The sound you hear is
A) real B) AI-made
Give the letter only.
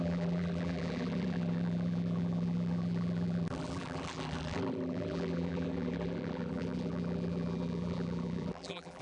B